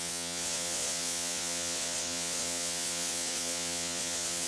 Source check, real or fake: fake